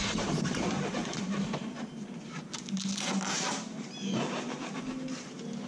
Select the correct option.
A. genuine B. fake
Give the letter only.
B